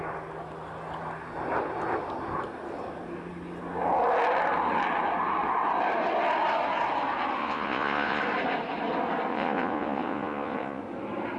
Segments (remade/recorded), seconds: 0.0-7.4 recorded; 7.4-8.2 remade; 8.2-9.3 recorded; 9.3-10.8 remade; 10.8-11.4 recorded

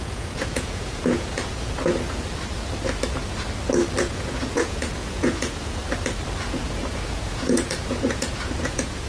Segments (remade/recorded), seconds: 0.0-1.8 remade; 1.8-4.0 recorded; 4.0-5.8 remade; 5.8-6.6 recorded; 6.6-9.1 remade

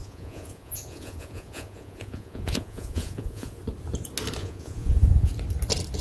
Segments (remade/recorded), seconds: 0.0-3.6 remade; 3.6-4.4 recorded; 4.4-5.3 remade; 5.3-6.0 recorded

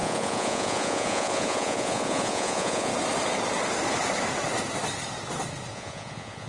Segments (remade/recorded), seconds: 0.0-2.9 remade; 2.9-5.7 recorded; 5.7-6.5 remade

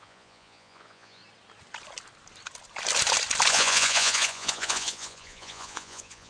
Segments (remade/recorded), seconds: 0.0-1.2 remade; 1.2-3.5 recorded; 3.5-6.3 remade

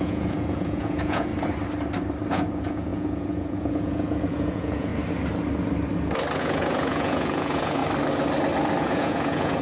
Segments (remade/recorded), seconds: 0.0-1.3 remade; 1.3-2.3 recorded; 2.3-4.9 remade; 4.9-6.4 recorded; 6.4-7.8 remade; 7.8-8.8 recorded; 8.8-9.6 remade

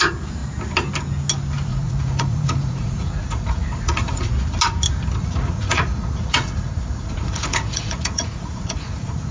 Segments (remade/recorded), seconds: 0.0-1.7 recorded; 1.7-4.3 remade; 4.3-5.2 recorded; 5.2-9.3 remade

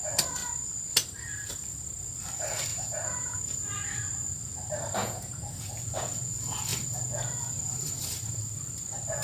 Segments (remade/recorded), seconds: 0.0-2.7 recorded; 2.7-3.4 remade; 3.4-5.0 recorded; 5.0-5.9 remade; 5.9-9.2 recorded